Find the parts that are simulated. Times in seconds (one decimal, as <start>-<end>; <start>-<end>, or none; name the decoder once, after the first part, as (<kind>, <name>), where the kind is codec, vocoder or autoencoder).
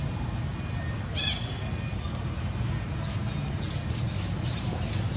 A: none